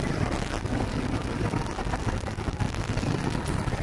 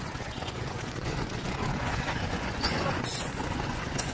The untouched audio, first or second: first